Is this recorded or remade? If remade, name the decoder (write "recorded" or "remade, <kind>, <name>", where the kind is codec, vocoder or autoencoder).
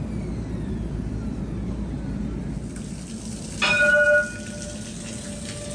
recorded